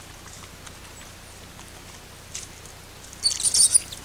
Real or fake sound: real